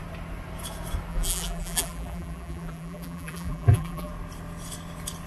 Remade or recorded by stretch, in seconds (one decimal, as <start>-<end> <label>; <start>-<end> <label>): 0.0-1.1 recorded; 1.1-4.1 remade; 4.1-5.3 recorded